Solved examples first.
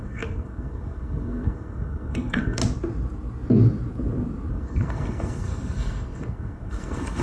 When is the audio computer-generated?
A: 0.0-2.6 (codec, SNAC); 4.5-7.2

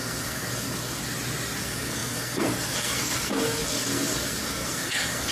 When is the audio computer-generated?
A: 0.0-1.0 (codec, SNAC); 1.6-5.3

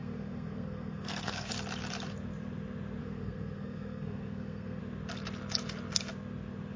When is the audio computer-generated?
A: 0.0-1.5 (codec, SNAC); 3.0-4.8

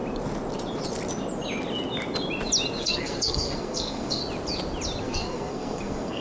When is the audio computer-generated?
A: 2.8-4.2 (codec, SNAC); 5.0-6.2